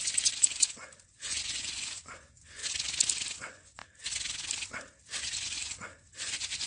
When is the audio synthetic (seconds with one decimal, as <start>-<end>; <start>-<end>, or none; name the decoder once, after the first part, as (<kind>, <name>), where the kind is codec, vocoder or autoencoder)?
0.0-2.6 (vocoder, Vocos); 3.4-3.8; 5.2-6.7